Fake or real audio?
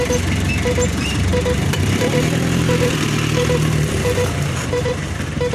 fake